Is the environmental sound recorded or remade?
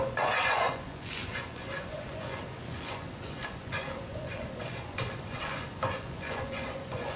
remade